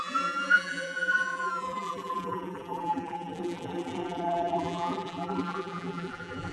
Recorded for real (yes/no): no